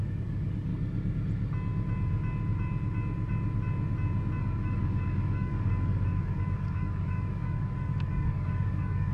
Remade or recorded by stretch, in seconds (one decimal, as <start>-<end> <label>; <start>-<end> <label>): 0.0-0.7 remade; 0.7-4.4 recorded; 4.4-9.1 remade